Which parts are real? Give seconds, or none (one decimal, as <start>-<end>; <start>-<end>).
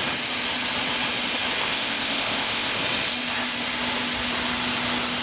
0.0-1.6; 2.8-5.2